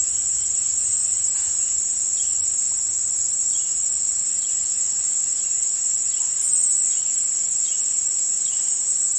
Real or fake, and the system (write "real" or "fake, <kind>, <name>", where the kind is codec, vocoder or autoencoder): real